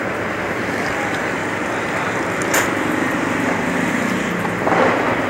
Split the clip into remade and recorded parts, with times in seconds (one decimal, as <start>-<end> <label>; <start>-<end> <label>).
0.0-5.3 recorded